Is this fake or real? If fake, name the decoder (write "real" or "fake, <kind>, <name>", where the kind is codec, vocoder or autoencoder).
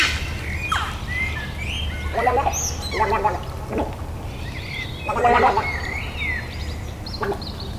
real